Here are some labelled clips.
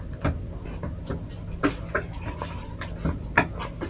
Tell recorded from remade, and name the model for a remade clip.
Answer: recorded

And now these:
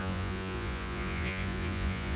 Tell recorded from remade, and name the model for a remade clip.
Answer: remade, vocoder, Vocos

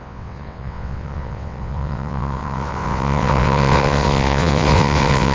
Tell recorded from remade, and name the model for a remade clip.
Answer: remade, vocoder, WaveNeXt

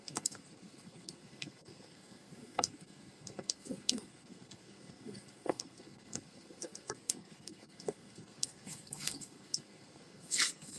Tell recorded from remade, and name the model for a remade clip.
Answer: remade, codec, SNAC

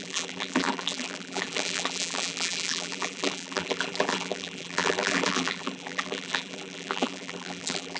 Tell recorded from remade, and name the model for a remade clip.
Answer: remade, vocoder, BigVGAN v2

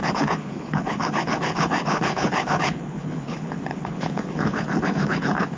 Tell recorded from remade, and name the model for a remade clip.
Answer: remade, codec, HILCodec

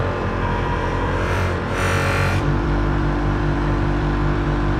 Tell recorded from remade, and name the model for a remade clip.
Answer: remade, vocoder, BigVGAN v2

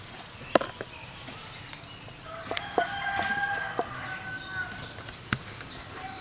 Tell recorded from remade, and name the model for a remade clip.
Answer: recorded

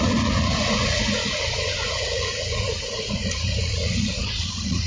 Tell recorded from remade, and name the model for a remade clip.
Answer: remade, vocoder, Vocos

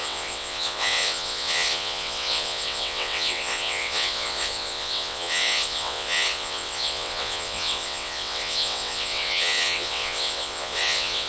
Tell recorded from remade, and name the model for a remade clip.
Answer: remade, vocoder, WaveNeXt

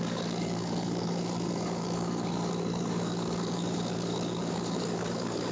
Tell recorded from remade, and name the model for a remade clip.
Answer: remade, codec, DAC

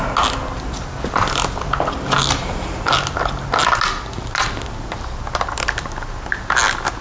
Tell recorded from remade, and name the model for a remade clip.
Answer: recorded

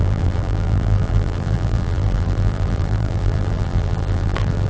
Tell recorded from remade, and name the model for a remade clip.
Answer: remade, vocoder, BigVGAN v2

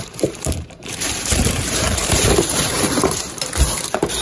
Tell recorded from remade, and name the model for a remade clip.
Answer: remade, vocoder, BigVGAN v2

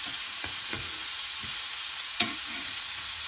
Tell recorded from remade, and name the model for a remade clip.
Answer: remade, vocoder, Vocos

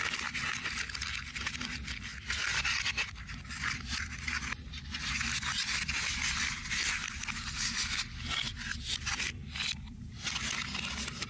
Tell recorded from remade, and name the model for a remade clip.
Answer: recorded